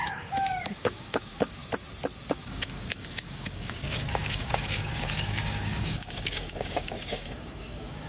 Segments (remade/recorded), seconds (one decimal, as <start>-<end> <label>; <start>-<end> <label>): 0.0-1.6 remade; 1.6-2.3 recorded; 2.3-8.1 remade